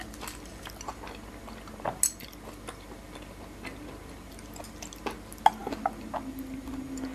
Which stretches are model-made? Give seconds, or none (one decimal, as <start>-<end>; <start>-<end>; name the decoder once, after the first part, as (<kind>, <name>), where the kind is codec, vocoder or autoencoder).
none